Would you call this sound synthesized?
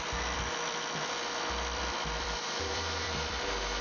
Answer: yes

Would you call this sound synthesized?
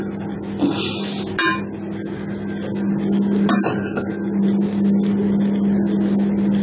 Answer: no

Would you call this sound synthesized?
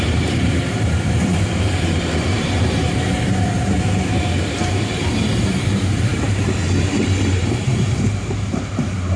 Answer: yes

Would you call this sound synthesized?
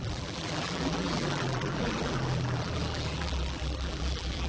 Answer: yes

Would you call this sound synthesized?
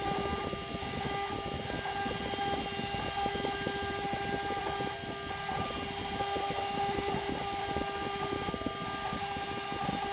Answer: no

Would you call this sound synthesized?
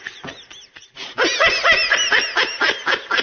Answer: no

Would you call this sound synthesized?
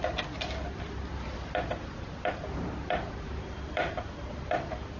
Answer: yes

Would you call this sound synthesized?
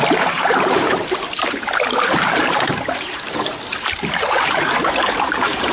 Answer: yes